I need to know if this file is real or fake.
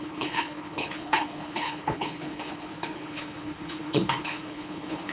fake